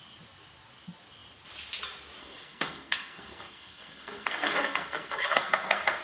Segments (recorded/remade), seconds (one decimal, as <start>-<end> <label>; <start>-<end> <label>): 0.0-2.2 recorded; 2.2-6.0 remade

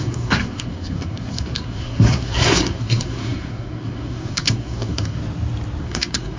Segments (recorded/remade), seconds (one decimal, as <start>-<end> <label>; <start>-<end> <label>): 0.0-5.2 remade; 5.2-5.8 recorded; 5.8-6.4 remade

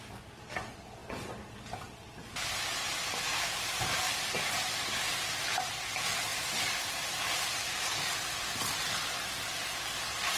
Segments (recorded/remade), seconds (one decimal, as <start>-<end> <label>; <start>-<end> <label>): 0.0-10.4 recorded

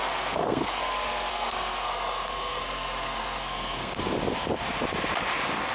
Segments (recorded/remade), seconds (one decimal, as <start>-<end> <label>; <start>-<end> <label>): 0.0-0.8 remade; 0.8-1.3 recorded; 1.3-4.0 remade; 4.0-5.7 recorded

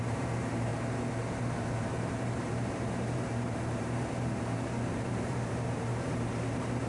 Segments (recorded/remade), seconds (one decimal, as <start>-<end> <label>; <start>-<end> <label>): 0.0-0.7 remade; 0.7-1.3 recorded; 1.3-6.9 remade

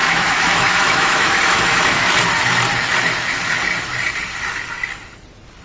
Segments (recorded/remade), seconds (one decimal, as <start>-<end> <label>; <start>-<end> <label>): 0.0-2.0 remade; 2.0-5.6 recorded